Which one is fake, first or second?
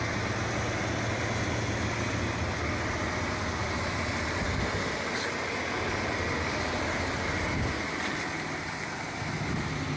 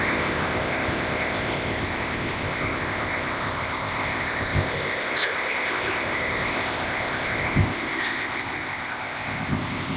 second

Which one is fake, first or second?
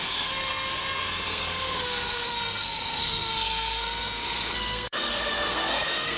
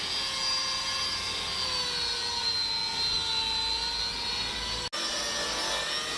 first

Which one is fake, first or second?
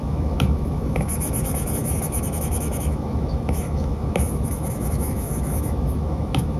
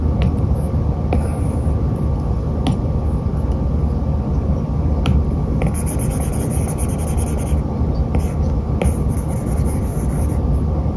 first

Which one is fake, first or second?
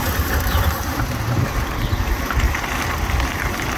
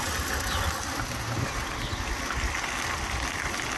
first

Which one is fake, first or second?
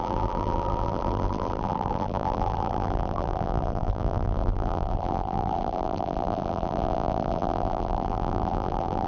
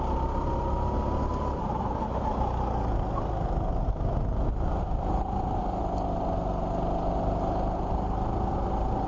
first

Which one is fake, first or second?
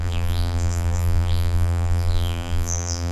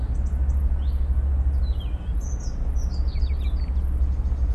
first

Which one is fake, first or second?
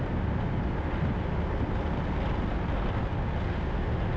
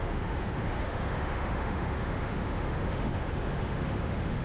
second